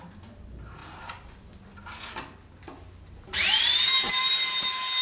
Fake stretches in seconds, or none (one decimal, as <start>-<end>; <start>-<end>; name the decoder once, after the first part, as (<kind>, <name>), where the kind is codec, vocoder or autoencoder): none